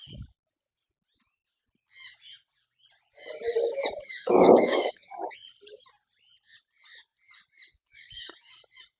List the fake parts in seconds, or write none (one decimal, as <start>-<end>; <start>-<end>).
4.0-5.4; 7.7-8.5